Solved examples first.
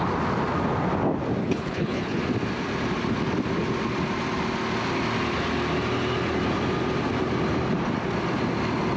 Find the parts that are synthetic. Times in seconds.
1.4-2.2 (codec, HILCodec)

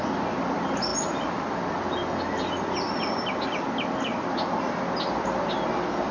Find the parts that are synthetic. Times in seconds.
none